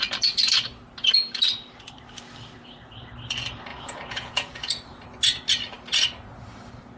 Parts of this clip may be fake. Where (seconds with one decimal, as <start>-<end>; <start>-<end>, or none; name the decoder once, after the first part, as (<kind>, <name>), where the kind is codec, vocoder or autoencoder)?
3.7-4.6 (vocoder, Vocos)